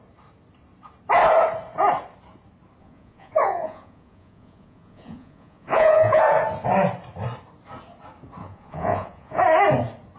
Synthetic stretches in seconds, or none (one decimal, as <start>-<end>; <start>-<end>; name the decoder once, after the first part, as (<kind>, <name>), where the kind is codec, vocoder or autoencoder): 2.8-6.2 (vocoder, Vocos); 8.4-9.4

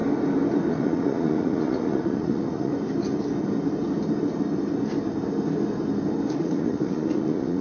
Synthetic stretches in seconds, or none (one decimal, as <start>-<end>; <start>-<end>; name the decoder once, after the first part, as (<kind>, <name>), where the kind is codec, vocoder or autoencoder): 0.7-2.7 (vocoder, Vocos); 6.4-7.6